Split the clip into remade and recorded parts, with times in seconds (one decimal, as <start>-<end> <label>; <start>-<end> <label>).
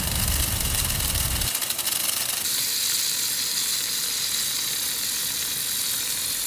0.0-6.5 recorded